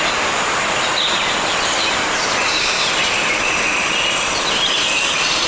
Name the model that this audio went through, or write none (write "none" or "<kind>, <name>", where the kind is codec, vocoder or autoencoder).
none